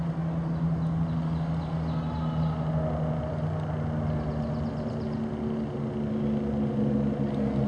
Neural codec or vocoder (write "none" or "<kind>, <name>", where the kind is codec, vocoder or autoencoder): none